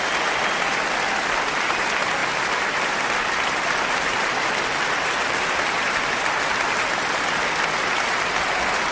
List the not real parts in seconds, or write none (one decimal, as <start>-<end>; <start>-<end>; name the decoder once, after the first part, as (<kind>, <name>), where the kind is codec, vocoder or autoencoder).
none